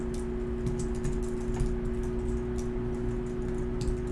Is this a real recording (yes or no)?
yes